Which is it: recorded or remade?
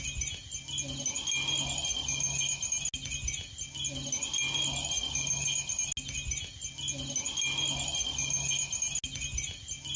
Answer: recorded